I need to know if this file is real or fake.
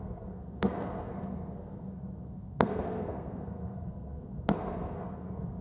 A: fake